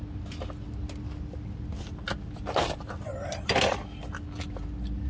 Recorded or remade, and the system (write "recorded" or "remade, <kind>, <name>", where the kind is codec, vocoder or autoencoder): recorded